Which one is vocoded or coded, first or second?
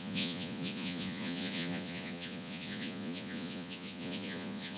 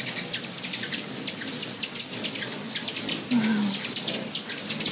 first